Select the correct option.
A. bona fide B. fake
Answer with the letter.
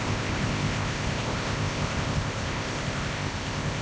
B